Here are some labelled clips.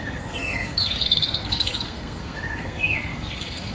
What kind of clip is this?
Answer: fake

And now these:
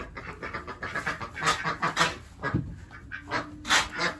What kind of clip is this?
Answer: real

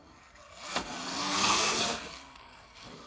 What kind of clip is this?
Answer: fake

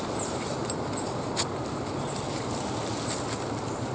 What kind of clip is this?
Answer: real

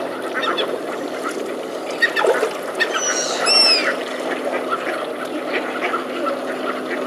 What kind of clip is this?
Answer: real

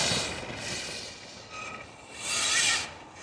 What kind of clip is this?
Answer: real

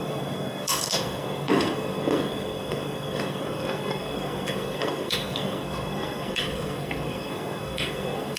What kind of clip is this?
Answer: fake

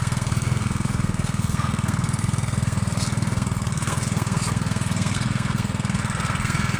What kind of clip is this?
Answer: fake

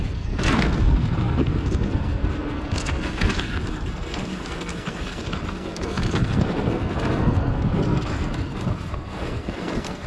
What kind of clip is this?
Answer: fake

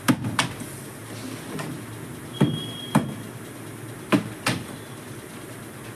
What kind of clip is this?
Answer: real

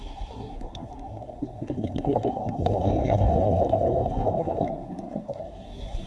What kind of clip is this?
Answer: fake